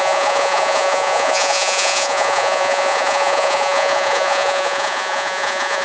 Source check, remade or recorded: remade